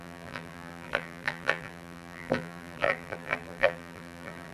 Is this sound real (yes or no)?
no